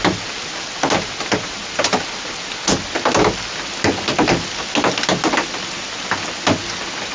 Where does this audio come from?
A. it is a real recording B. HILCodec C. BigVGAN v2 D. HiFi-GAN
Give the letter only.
A